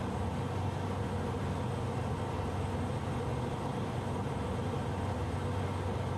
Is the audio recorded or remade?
recorded